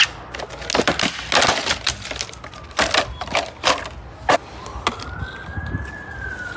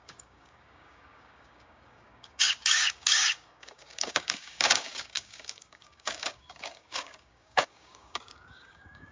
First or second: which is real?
first